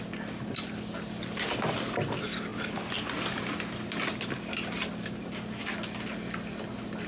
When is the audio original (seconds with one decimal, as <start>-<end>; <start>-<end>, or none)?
0.0-7.1